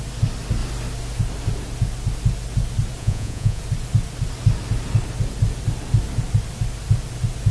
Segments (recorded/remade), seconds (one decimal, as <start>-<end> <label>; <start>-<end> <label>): 0.0-3.0 recorded; 3.0-3.6 remade; 3.6-7.5 recorded

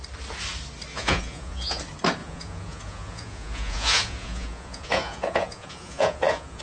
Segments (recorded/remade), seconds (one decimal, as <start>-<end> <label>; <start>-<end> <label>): 0.0-0.9 recorded; 0.9-1.8 remade; 1.8-2.2 recorded; 2.2-6.6 remade